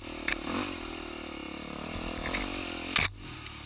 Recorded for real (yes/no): yes